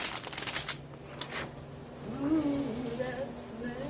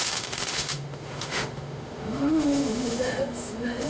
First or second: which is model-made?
second